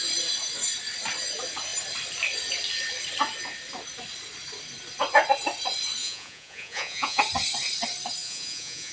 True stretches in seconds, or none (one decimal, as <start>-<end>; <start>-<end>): 0.0-6.0; 7.2-8.2